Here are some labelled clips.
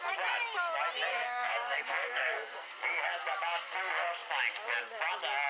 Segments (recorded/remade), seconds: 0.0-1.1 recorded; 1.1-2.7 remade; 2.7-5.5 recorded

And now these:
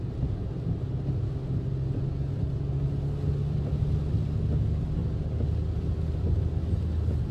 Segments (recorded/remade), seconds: 0.0-7.3 recorded

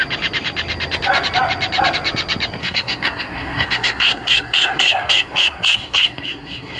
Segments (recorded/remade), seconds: 0.0-2.6 recorded; 2.6-6.8 remade

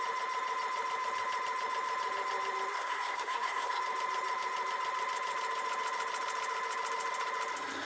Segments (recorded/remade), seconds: 0.0-2.7 recorded; 2.7-3.8 remade; 3.8-7.8 recorded